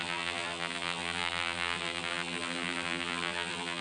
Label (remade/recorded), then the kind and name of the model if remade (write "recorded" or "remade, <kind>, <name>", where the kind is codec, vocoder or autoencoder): remade, vocoder, BigVGAN v2